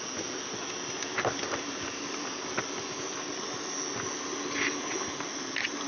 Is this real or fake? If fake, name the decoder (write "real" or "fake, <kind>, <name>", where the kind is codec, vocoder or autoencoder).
real